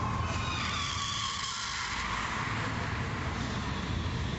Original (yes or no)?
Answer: yes